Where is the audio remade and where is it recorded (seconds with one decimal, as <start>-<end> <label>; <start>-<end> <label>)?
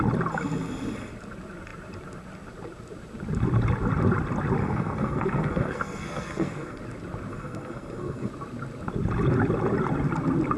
0.0-4.6 recorded; 4.6-6.8 remade; 6.8-7.3 recorded; 7.3-8.3 remade; 8.3-10.6 recorded